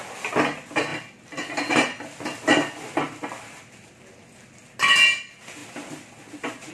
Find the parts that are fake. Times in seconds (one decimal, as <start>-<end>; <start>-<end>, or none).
none